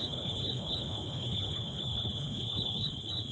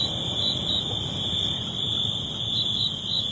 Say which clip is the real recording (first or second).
second